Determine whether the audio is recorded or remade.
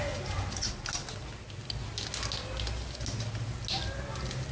recorded